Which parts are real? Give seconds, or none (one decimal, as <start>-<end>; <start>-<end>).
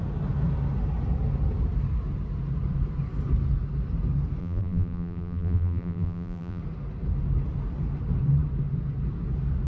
0.0-4.4; 6.6-9.7